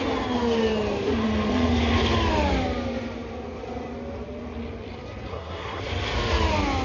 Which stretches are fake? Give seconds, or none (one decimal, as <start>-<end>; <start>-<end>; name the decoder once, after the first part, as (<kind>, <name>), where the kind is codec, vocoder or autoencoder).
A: 5.3-5.8 (codec, SNAC)